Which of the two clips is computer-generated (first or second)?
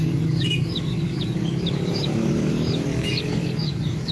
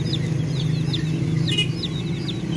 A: first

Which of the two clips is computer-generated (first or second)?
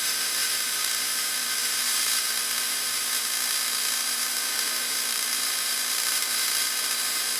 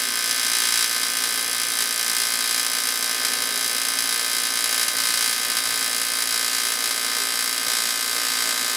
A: first